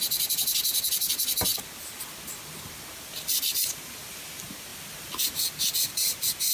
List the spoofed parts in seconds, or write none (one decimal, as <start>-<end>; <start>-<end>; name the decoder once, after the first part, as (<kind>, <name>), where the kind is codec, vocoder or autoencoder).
none